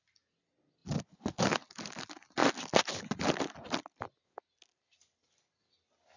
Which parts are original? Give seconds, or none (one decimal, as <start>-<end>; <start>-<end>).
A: 0.0-6.2